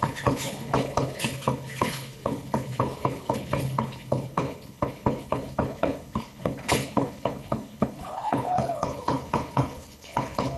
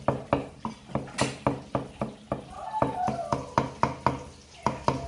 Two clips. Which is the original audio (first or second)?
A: second